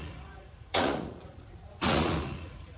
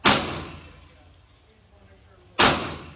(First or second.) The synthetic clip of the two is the first